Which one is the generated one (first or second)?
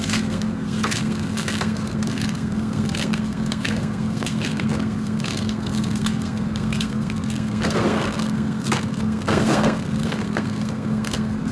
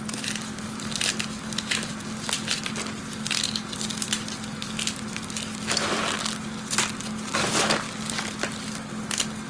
first